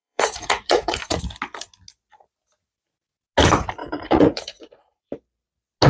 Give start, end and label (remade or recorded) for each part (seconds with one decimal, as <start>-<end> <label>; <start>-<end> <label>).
0.0-1.2 remade; 1.2-3.8 recorded; 3.8-5.0 remade; 5.0-5.9 recorded